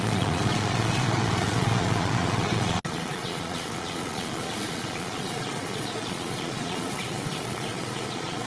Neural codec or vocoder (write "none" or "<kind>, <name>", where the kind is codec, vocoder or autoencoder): vocoder, Vocos